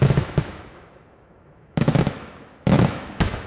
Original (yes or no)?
no